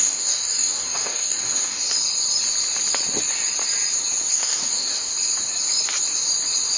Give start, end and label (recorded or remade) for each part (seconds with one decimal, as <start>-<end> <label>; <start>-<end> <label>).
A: 0.0-1.8 remade; 1.8-4.3 recorded; 4.3-5.1 remade; 5.1-6.8 recorded